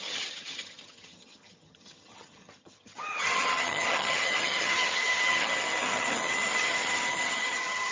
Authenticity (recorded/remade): remade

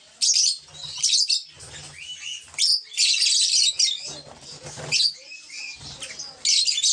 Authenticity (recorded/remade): recorded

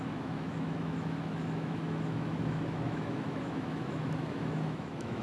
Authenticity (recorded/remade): remade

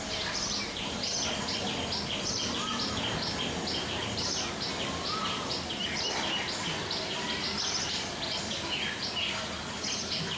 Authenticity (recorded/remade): recorded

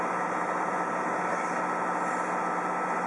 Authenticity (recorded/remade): recorded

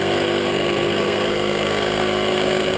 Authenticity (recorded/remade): remade